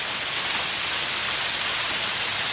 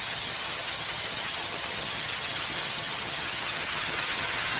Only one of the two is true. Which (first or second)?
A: first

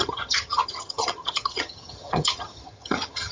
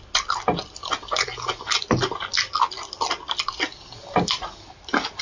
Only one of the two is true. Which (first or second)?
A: second